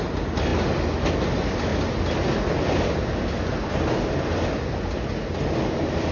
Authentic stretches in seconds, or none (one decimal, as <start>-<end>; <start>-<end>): 0.0-6.1

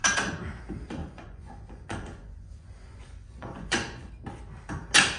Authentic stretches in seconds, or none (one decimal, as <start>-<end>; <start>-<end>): 0.0-1.0; 4.1-5.2

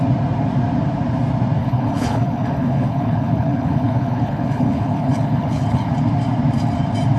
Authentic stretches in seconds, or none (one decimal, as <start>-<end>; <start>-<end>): 0.0-1.6; 5.9-7.2

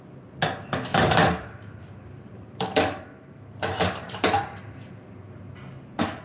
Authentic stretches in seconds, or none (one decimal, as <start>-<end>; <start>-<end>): 0.0-0.9; 4.6-6.2

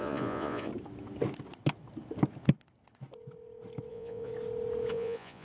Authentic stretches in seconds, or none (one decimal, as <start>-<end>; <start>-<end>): 0.7-3.9; 4.3-4.9

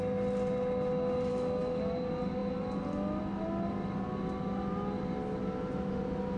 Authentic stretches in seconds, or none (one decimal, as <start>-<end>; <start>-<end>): 0.0-1.3; 1.8-6.4